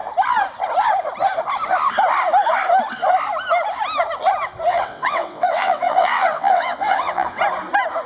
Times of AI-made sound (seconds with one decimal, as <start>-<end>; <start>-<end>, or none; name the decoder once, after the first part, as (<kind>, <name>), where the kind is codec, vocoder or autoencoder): 4.7-7.4 (vocoder, WaveNeXt)